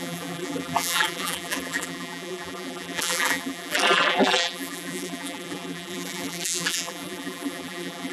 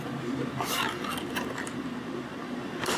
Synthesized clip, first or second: first